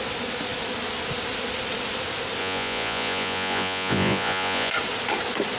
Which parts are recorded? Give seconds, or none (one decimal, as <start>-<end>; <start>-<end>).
0.0-2.4; 4.7-5.6